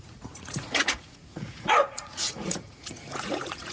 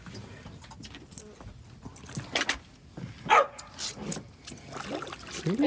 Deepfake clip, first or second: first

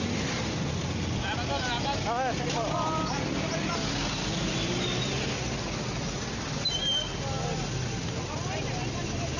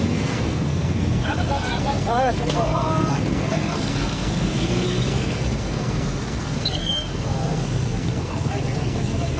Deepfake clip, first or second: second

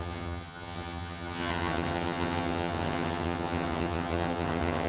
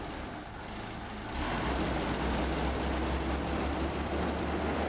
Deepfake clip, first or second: first